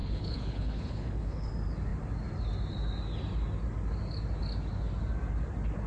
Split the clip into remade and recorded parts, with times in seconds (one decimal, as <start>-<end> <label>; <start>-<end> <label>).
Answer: 0.0-1.5 remade; 1.5-5.9 recorded